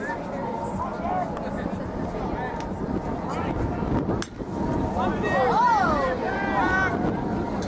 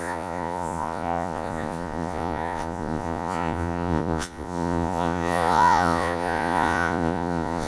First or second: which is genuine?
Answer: first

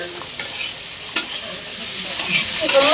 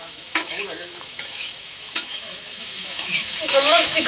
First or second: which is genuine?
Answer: first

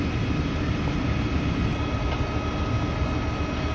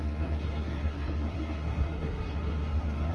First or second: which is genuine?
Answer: first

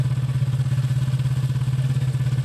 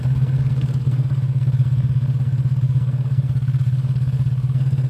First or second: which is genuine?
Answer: first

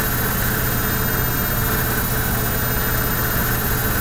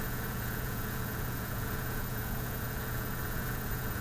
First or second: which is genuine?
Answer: first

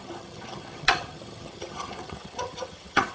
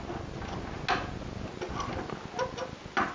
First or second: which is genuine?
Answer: second